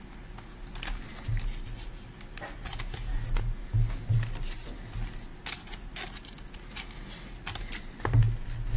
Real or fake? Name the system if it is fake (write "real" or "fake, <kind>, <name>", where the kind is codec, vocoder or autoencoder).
real